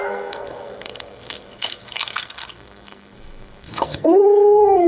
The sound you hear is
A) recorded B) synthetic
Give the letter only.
B